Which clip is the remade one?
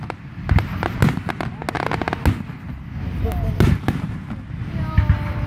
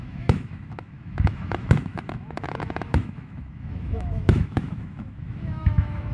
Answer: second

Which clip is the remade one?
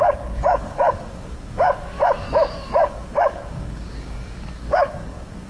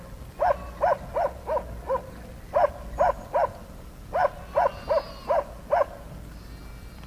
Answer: first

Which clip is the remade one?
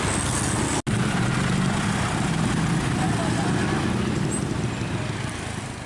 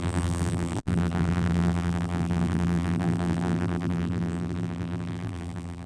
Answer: second